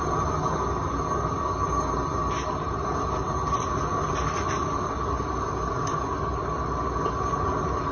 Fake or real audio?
real